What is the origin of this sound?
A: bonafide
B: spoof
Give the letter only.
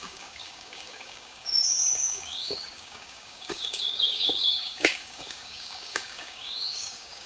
B